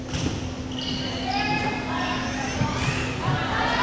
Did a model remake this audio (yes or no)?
no